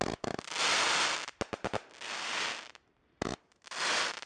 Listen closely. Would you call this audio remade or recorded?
recorded